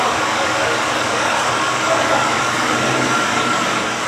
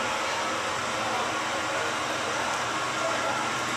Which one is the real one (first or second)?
second